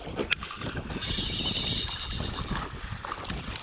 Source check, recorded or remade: recorded